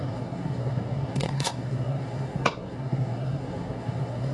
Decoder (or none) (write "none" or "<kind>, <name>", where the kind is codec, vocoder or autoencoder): codec, SNAC